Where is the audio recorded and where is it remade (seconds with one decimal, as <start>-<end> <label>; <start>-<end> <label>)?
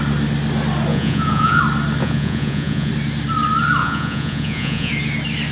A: 0.0-0.9 recorded; 0.9-1.6 remade; 1.6-2.0 recorded; 2.0-2.9 remade; 2.9-3.8 recorded; 3.8-4.9 remade; 4.9-5.5 recorded